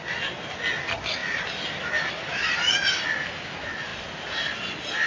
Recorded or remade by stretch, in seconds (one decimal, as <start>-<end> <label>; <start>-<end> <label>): 0.0-5.1 recorded